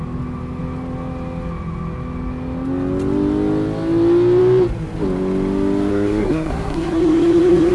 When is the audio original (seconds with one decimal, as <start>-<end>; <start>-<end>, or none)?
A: 0.0-5.9